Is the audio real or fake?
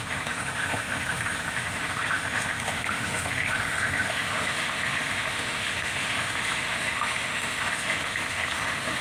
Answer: fake